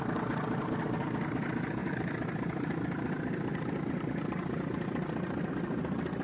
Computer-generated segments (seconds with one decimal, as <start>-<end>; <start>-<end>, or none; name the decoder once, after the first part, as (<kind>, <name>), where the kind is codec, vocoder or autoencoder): 1.8-5.5 (vocoder, BigVGAN v2)